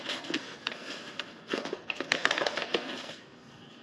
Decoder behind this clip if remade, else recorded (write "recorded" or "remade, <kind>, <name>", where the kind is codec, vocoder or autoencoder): remade, codec, SNAC